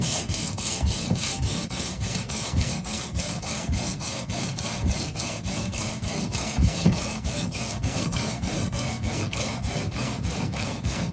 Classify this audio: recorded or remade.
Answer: remade